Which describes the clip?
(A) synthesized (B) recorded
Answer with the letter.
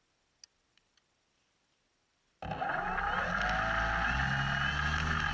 B